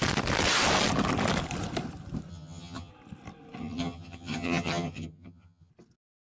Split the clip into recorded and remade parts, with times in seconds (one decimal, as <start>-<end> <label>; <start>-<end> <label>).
0.0-2.3 recorded; 2.3-2.9 remade; 2.9-3.6 recorded; 3.6-5.7 remade; 5.7-6.3 recorded